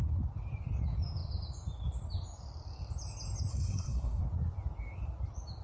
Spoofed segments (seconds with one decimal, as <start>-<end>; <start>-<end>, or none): 3.5-4.2

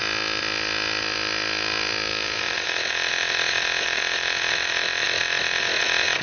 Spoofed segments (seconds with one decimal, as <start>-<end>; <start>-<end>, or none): 2.1-5.8

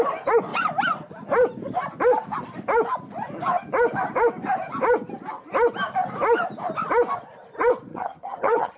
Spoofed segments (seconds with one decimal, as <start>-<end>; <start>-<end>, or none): 7.9-8.8